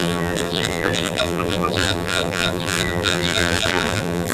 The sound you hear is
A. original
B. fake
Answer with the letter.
B